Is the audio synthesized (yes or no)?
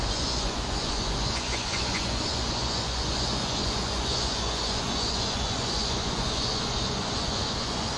yes